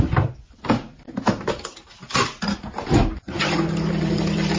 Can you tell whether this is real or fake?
real